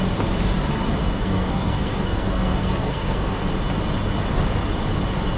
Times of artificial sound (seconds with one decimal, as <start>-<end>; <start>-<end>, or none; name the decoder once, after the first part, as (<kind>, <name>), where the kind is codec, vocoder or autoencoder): 1.0-3.5 (codec, SNAC)